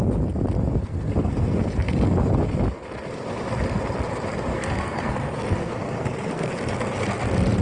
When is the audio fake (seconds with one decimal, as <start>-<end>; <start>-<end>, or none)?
0.8-1.6; 4.5-5.1; 5.6-6.5